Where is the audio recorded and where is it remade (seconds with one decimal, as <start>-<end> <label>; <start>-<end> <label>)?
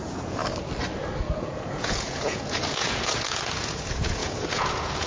0.0-0.4 remade; 0.4-1.2 recorded; 1.2-5.1 remade